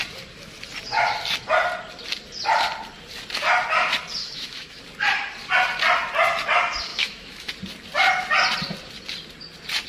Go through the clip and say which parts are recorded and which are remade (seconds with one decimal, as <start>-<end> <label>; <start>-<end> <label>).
0.0-4.2 recorded; 4.2-4.8 remade; 4.8-6.9 recorded; 6.9-7.5 remade; 7.5-9.9 recorded